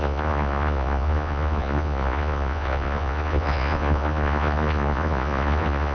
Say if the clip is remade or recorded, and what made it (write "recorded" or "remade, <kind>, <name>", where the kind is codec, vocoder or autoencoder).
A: remade, vocoder, Vocos